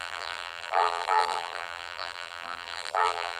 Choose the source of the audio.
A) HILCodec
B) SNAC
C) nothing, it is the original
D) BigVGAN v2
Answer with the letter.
D